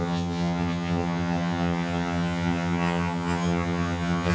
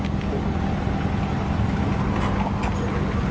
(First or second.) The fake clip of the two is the first